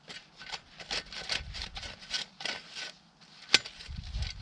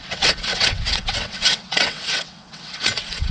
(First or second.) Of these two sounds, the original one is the first